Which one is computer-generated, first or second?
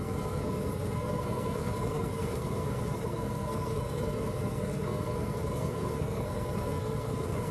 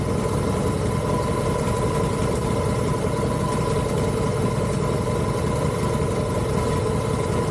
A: first